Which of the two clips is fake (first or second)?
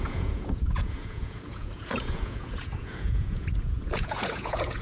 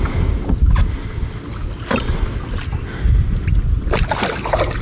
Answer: first